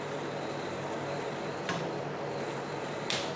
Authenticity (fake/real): fake